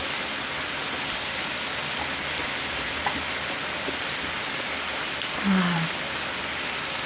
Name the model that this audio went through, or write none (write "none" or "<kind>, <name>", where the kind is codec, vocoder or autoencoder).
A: none